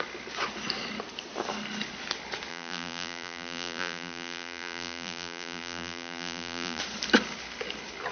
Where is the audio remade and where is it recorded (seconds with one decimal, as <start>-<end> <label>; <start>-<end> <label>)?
0.0-2.5 recorded; 2.5-6.8 remade; 6.8-8.1 recorded